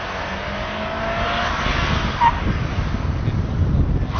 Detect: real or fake real